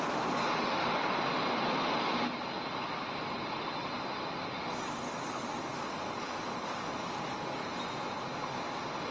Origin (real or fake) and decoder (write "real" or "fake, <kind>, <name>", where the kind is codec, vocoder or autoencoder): real